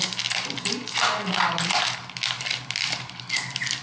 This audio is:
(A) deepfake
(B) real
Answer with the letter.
B